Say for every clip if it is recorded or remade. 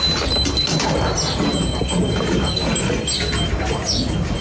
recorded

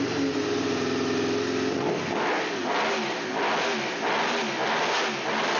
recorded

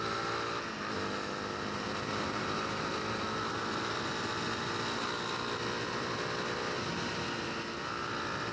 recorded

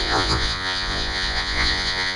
remade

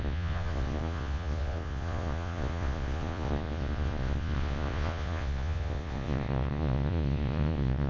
remade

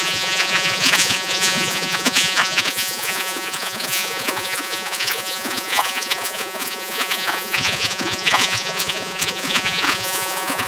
remade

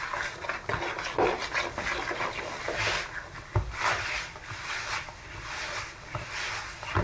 recorded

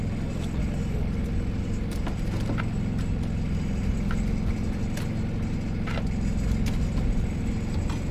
recorded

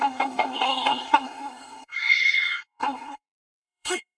remade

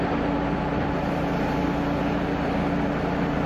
recorded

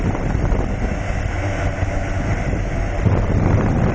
recorded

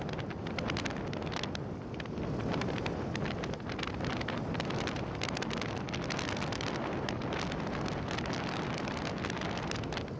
recorded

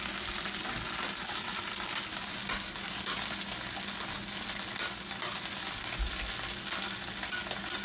recorded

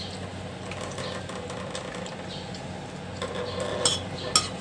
recorded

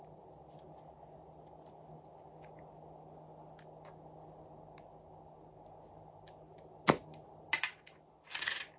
recorded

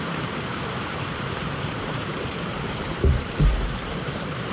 remade